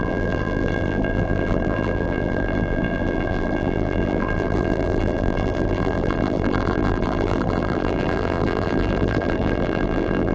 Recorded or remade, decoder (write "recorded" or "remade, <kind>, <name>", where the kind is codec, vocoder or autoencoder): remade, vocoder, BigVGAN v2